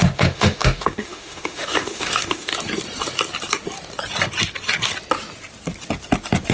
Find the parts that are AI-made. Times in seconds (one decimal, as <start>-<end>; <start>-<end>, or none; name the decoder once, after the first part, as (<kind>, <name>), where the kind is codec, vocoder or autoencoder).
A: 0.0-2.5 (autoencoder, DAC-VAE)